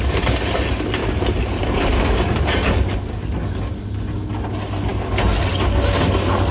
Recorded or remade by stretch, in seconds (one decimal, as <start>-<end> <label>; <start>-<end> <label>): 0.0-6.5 recorded